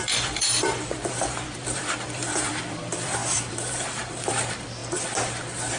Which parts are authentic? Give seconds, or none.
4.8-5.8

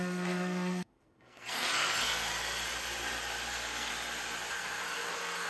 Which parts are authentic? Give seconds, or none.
2.3-3.5; 3.9-4.5

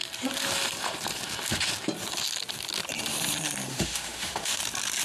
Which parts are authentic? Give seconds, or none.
0.0-3.7; 4.6-5.0

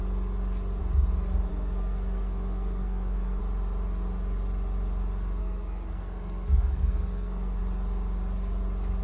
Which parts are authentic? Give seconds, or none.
0.0-1.5; 3.4-5.4; 7.6-9.0

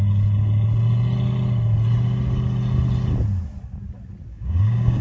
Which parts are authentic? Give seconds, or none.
0.0-4.3

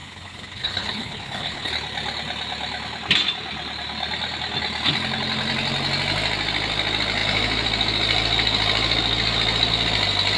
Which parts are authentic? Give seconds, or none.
1.7-10.4

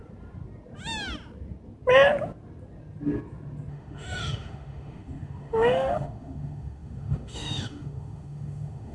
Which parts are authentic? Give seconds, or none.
0.0-3.7